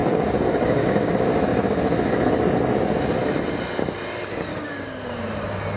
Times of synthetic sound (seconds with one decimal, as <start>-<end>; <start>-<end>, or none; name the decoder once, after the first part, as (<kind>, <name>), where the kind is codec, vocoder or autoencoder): 0.0-1.1 (codec, DAC); 4.5-5.2